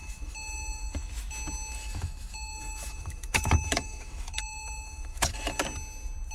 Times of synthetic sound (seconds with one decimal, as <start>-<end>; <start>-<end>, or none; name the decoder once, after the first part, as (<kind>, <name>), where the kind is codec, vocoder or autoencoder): 0.0-1.1 (autoencoder, DAC-VAE); 1.8-5.6